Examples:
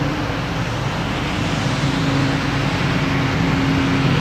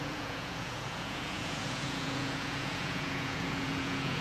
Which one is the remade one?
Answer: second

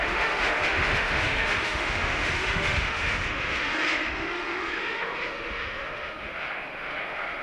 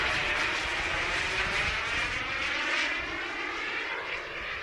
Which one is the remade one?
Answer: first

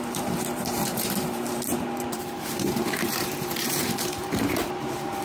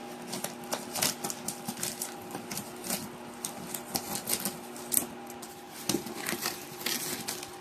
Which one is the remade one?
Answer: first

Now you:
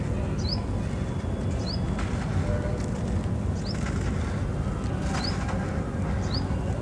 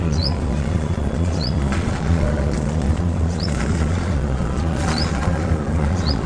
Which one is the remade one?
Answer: second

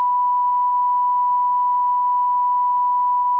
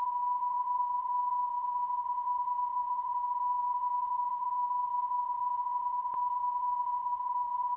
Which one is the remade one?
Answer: second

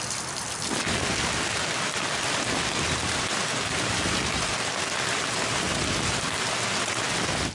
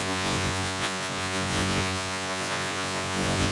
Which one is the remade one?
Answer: second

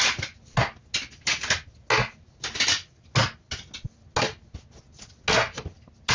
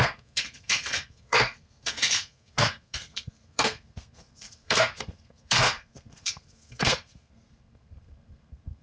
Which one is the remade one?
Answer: second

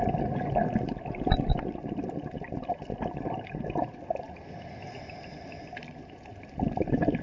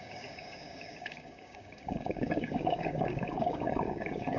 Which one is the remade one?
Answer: second